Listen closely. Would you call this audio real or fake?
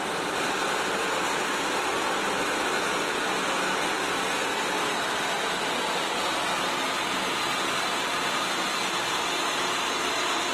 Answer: real